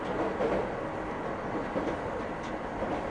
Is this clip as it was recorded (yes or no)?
yes